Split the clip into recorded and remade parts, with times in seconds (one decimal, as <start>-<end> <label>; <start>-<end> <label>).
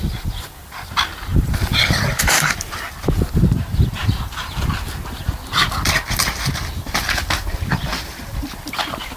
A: 0.0-1.3 recorded; 1.3-2.7 remade; 2.7-4.0 recorded; 4.0-4.5 remade; 4.5-9.2 recorded